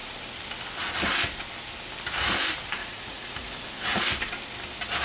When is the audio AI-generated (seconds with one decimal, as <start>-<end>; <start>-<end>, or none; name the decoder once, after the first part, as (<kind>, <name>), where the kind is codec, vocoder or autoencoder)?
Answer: 2.8-4.0 (vocoder, Vocos)